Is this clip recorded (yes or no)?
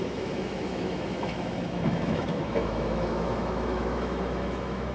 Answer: no